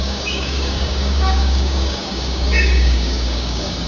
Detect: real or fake fake